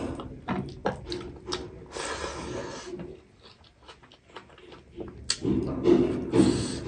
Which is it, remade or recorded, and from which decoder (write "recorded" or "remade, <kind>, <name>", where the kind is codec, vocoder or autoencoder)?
recorded